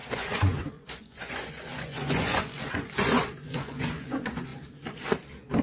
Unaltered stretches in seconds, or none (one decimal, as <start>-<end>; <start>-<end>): 4.5-5.6